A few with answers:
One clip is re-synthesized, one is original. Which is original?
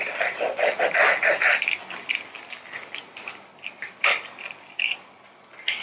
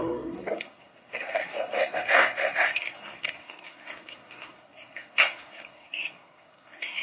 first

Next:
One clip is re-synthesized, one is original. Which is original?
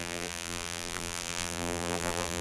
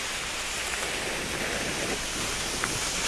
second